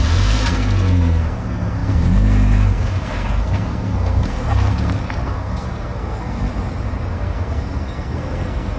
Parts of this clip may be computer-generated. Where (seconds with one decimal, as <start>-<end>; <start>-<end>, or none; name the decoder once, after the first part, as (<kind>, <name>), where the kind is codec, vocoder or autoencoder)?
0.0-6.5 (codec, SNAC); 7.1-8.8